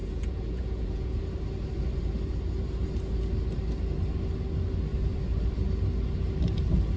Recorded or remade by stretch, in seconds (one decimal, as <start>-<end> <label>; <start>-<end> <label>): 0.0-1.2 remade; 1.2-7.0 recorded